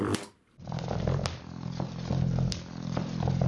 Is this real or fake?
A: fake